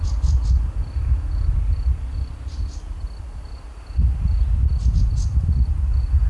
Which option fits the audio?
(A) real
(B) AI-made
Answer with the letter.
A